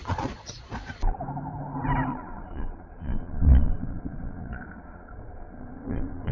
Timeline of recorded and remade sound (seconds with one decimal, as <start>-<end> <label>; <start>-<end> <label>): 0.0-1.2 remade; 1.2-2.1 recorded; 2.1-6.3 remade